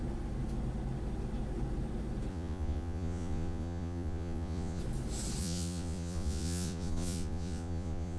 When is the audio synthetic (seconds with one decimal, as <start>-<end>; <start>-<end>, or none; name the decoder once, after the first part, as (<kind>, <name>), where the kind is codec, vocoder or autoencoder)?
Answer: 2.3-4.8 (vocoder, Vocos); 5.4-8.2